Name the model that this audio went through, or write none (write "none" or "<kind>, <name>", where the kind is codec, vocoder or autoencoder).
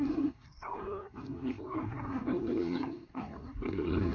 codec, SNAC